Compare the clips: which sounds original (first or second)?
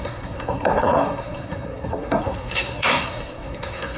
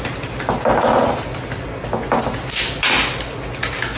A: second